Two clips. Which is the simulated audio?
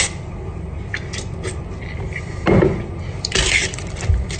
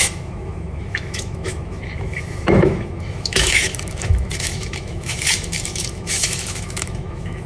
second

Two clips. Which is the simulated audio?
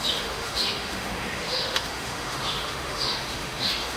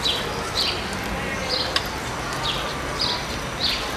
first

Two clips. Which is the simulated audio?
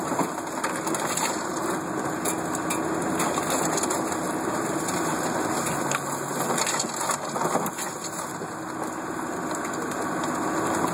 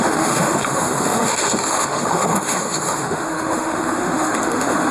second